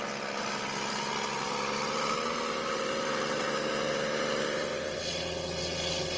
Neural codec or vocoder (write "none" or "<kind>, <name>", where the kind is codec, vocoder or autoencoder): none